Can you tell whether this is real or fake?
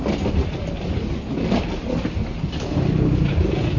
real